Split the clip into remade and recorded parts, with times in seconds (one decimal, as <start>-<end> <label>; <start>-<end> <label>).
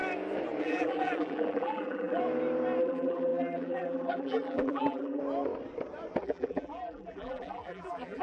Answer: 0.0-0.6 recorded; 0.6-2.2 remade; 2.2-2.8 recorded; 2.8-5.2 remade; 5.2-6.2 recorded; 6.2-8.2 remade